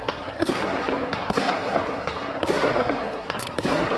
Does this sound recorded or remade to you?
remade